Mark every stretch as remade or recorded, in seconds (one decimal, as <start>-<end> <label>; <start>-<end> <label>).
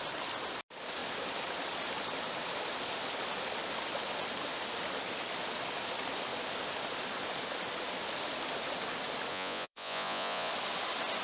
0.0-9.3 recorded; 9.3-10.5 remade; 10.5-11.2 recorded